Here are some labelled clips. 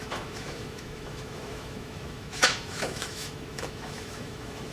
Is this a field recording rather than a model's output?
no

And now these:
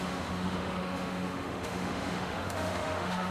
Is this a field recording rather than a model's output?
no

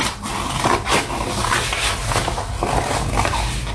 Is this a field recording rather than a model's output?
yes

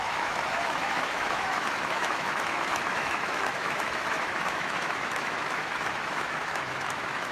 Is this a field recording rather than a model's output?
no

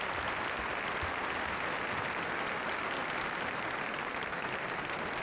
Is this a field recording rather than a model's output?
yes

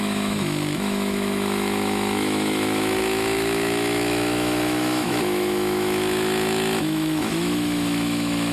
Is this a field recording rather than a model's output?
no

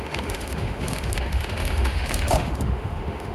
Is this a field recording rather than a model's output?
no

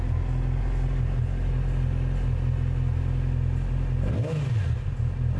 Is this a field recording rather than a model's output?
yes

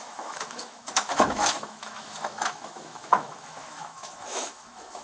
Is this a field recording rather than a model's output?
no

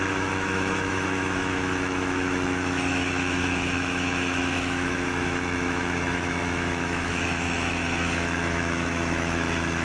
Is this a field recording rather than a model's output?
no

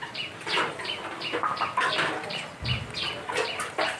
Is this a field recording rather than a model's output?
yes